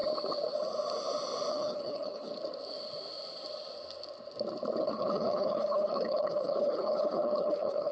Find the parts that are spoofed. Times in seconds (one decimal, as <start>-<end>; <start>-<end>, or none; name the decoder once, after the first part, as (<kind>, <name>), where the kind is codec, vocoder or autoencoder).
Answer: 1.5-2.3 (codec, HILCodec); 4.8-7.9